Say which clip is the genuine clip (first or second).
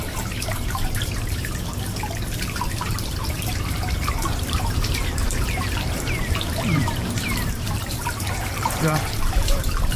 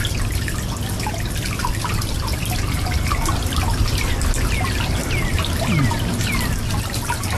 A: second